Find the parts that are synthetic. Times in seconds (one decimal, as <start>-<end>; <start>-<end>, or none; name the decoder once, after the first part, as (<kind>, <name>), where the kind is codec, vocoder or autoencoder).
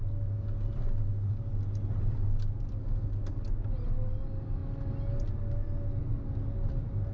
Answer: 2.8-3.4 (codec, SNAC)